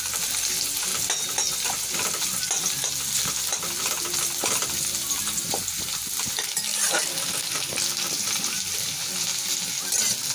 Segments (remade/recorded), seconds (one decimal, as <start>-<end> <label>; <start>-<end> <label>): 0.0-0.9 remade; 0.9-2.1 recorded; 2.1-9.3 remade; 9.3-10.3 recorded